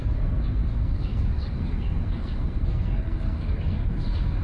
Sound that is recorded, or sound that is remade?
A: remade